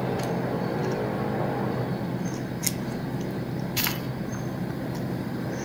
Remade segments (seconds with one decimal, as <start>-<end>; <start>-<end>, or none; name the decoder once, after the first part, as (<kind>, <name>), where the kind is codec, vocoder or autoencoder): 4.3-5.6 (vocoder, BigVGAN v2)